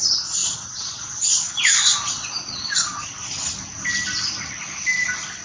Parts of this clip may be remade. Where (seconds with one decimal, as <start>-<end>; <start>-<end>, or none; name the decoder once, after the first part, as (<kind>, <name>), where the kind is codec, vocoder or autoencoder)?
0.4-3.3 (vocoder, Vocos)